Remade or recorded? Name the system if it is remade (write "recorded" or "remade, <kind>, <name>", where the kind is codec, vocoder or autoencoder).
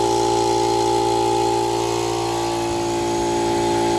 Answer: recorded